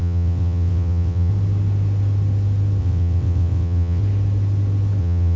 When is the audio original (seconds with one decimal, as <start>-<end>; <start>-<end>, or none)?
1.3-2.8; 4.0-5.0